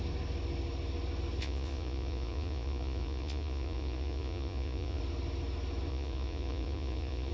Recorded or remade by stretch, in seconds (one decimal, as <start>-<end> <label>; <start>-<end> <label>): 0.0-1.4 recorded; 1.4-5.0 remade; 5.0-5.9 recorded; 5.9-7.3 remade